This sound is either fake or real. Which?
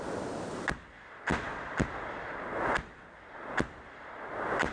real